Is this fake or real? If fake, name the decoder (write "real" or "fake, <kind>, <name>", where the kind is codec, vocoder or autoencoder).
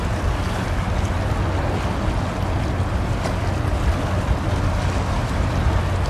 real